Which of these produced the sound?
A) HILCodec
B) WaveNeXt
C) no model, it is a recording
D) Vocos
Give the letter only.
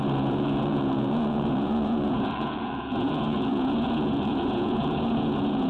D